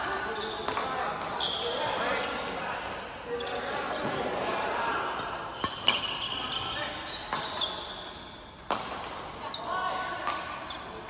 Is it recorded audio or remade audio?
recorded